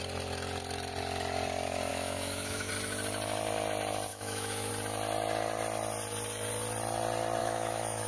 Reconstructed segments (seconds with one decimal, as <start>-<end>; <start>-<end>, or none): 1.9-2.7; 4.1-4.7; 7.4-8.1